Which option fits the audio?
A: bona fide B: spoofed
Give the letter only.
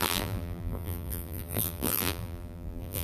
B